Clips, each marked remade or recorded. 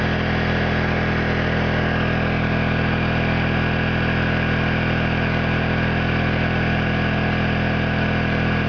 recorded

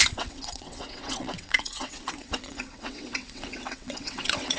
remade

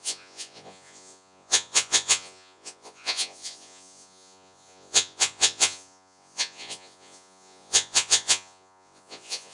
remade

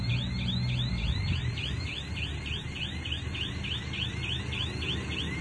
recorded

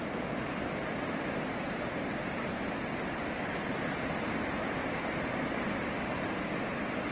recorded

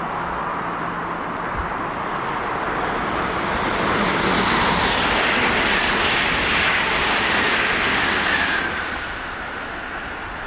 recorded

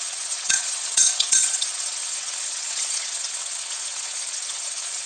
remade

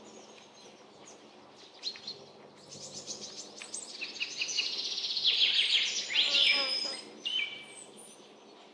recorded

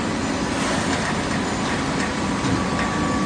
recorded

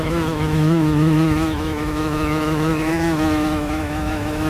remade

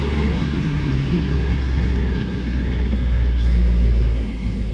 remade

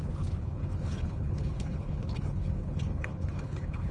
remade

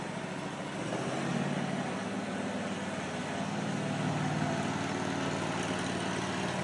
recorded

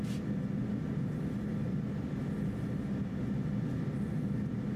recorded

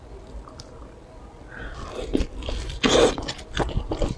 recorded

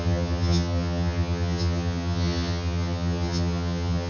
remade